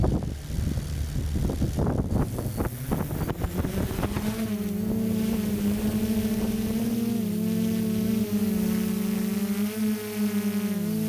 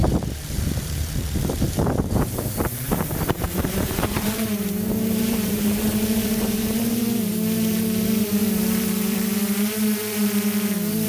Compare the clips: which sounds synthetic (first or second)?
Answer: second